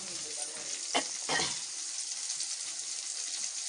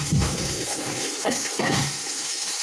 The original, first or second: first